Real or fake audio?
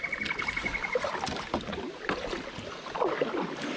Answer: real